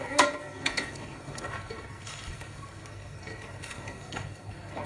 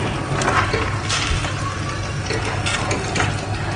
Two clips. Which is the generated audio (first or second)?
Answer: first